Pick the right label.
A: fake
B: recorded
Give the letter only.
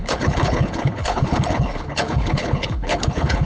A